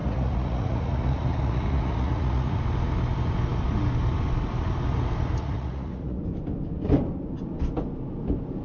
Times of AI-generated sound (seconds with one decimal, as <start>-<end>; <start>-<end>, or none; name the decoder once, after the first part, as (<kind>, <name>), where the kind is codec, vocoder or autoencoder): 0.0-2.6 (vocoder, Vocos); 5.4-6.2